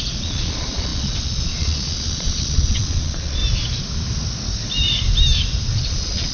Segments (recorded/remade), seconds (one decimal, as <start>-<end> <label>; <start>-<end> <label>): 0.0-3.4 remade; 3.4-5.8 recorded; 5.8-6.3 remade

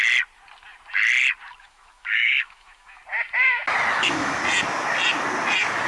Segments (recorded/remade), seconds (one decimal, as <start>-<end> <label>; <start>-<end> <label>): 0.0-1.6 recorded; 1.6-3.0 remade; 3.0-3.9 recorded; 3.9-4.4 remade; 4.4-5.9 recorded

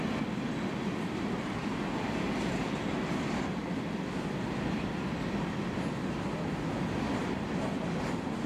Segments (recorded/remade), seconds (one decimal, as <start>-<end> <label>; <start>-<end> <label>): 0.0-1.6 recorded; 1.6-6.4 remade; 6.4-8.5 recorded

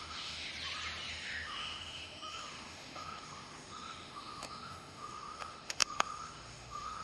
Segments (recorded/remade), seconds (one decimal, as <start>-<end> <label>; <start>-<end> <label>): 0.0-0.5 remade; 0.5-1.1 recorded; 1.1-7.0 remade

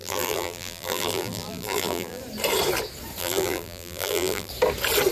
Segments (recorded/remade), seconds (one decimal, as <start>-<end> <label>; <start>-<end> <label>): 0.0-2.2 remade; 2.2-3.2 recorded; 3.2-4.5 remade; 4.5-5.1 recorded

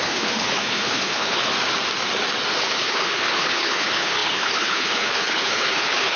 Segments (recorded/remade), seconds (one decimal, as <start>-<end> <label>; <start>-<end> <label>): 0.0-1.5 remade; 1.5-2.6 recorded; 2.6-6.2 remade